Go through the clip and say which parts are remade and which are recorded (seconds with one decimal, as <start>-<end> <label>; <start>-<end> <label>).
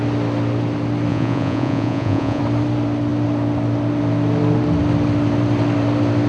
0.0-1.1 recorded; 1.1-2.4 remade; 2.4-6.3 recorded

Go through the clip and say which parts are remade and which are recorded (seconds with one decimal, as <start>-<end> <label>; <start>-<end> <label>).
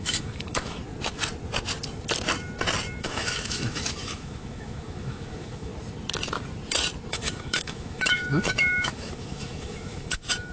0.0-0.8 remade; 0.8-3.0 recorded; 3.0-5.7 remade; 5.7-7.1 recorded; 7.1-10.5 remade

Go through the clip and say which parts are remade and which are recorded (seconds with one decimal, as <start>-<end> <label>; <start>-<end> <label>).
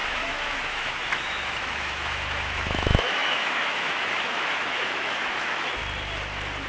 0.0-5.8 remade; 5.8-6.7 recorded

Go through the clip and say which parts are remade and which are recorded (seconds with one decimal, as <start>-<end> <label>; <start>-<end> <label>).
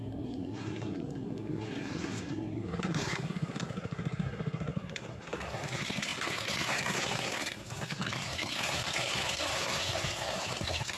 0.0-11.0 remade